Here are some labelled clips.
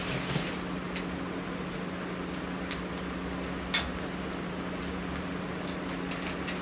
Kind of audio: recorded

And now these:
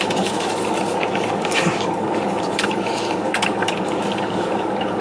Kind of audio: remade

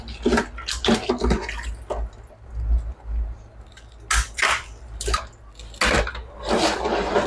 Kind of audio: recorded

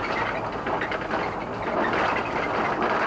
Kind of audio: recorded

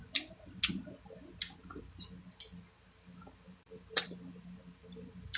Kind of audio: recorded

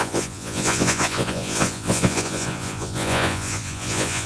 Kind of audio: remade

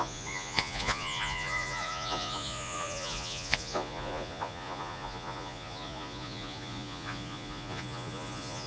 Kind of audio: remade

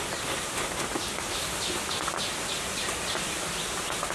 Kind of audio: recorded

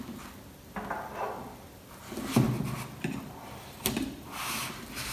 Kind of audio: recorded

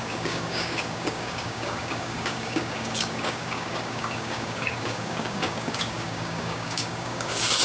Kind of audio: remade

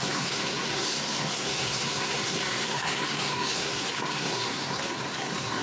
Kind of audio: remade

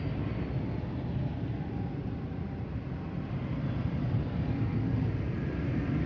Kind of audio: remade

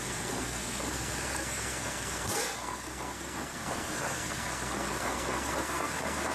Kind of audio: remade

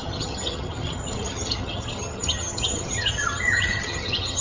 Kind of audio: remade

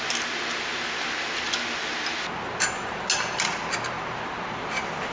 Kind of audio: recorded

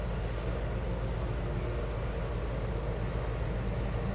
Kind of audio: recorded